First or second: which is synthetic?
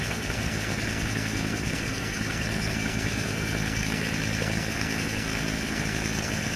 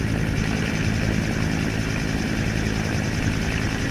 first